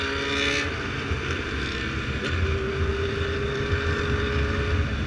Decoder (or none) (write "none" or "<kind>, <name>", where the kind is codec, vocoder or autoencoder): none